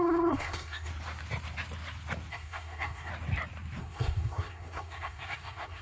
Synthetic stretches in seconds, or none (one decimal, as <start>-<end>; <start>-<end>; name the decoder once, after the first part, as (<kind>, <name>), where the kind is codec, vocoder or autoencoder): 0.0-0.9 (codec, SNAC); 2.3-3.1; 3.8-5.8